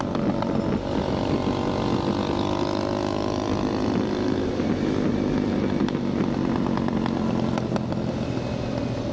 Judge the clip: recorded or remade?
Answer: recorded